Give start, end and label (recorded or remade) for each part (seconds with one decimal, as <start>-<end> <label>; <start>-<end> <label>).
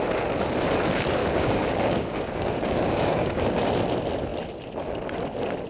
0.0-1.2 recorded; 1.2-3.4 remade; 3.4-5.7 recorded